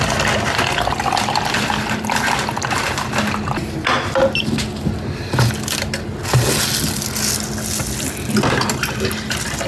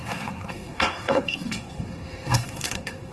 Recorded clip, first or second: first